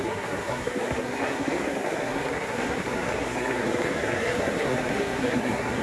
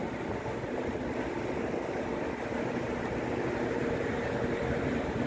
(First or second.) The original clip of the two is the second